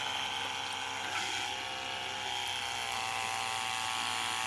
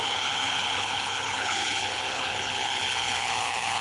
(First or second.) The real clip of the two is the first